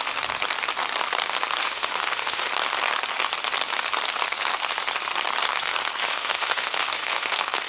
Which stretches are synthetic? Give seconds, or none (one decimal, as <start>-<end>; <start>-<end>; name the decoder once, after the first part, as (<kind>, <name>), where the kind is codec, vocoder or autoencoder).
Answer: 1.6-2.5 (autoencoder, DAC-VAE); 6.0-7.7